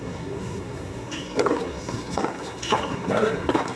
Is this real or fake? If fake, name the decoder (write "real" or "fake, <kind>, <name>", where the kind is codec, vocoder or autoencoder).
fake, codec, SNAC